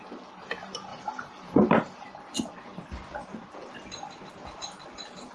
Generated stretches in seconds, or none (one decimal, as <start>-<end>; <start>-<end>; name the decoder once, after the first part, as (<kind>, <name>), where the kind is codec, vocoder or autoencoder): 0.9-1.7 (vocoder, BigVGAN v2)